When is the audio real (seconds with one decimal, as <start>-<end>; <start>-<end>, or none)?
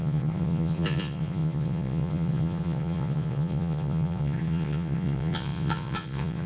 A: none